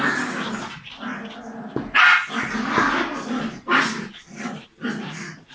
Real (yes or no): yes